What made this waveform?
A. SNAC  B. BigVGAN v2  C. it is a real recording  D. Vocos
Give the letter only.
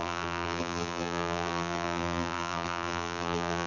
B